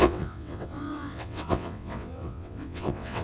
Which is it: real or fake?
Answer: fake